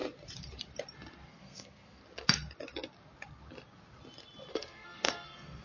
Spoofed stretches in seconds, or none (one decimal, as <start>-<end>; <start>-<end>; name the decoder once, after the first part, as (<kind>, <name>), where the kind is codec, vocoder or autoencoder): 1.3-2.0 (codec, SNAC); 4.5-5.6